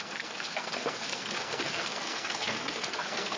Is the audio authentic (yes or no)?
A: no